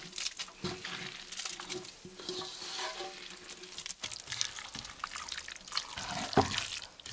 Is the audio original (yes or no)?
yes